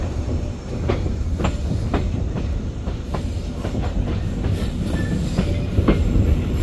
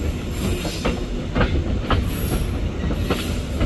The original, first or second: second